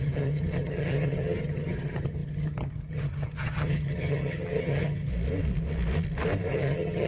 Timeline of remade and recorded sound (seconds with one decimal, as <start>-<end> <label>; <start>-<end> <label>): 0.0-5.1 remade; 5.1-6.5 recorded; 6.5-7.1 remade